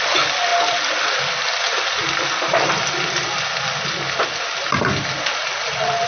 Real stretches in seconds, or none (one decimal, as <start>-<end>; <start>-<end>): 0.0-6.1

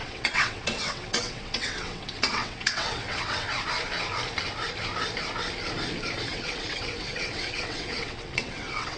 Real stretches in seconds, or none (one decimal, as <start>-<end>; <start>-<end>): 3.5-6.3